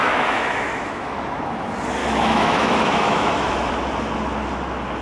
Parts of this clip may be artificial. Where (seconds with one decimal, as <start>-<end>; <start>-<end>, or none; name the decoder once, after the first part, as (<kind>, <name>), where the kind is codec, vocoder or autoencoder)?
0.0-1.4 (autoencoder, DAC-VAE); 2.0-3.7